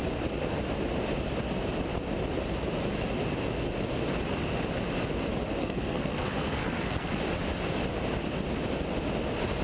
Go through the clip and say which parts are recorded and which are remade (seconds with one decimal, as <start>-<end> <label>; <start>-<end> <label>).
0.0-5.6 recorded; 5.6-7.2 remade; 7.2-9.6 recorded

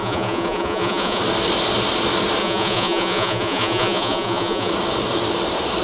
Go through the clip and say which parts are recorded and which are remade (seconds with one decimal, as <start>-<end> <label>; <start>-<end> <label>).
0.0-1.2 remade; 1.2-2.4 recorded; 2.4-4.7 remade; 4.7-5.8 recorded